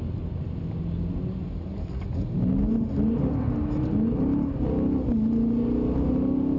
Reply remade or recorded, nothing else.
recorded